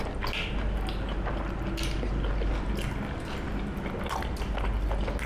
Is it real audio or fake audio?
real